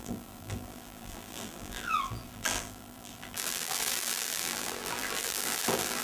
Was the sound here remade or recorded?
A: remade